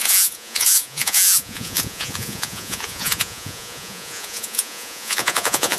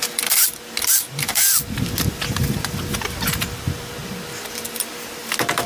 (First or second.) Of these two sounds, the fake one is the first